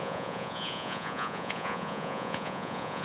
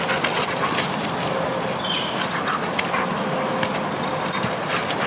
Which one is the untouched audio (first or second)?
second